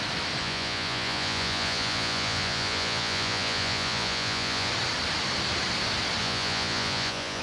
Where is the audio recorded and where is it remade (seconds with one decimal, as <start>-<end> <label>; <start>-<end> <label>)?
0.0-0.4 recorded; 0.4-4.7 remade; 4.7-6.2 recorded; 6.2-7.4 remade